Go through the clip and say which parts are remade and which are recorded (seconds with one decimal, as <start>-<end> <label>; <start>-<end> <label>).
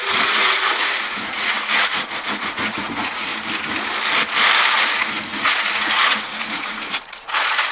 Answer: 0.0-3.3 remade; 3.3-4.8 recorded; 4.8-7.7 remade